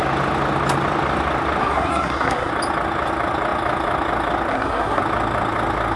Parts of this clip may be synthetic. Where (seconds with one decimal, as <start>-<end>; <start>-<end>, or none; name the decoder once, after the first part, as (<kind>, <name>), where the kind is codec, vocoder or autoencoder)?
1.6-2.5 (codec, SNAC); 4.5-5.0